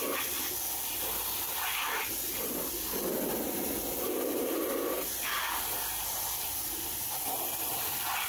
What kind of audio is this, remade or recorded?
recorded